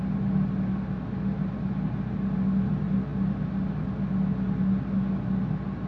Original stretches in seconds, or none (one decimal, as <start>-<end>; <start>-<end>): 0.0-5.9